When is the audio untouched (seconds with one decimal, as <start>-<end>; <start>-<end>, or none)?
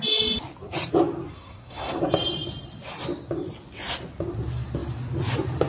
0.0-1.3; 2.0-5.7